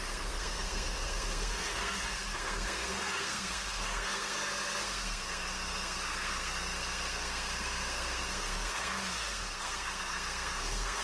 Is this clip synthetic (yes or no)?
yes